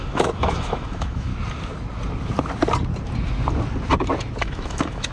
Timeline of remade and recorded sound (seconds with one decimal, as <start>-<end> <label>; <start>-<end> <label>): 0.0-1.3 remade; 1.3-4.4 recorded; 4.4-5.1 remade